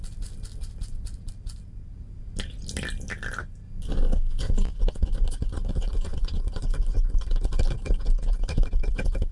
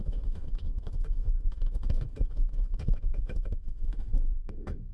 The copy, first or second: second